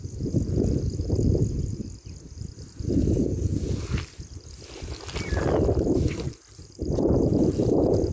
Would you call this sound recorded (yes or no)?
yes